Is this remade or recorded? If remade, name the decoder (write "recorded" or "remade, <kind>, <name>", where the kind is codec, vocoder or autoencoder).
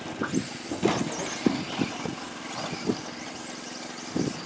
recorded